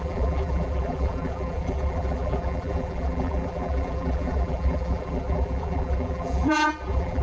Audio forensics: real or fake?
fake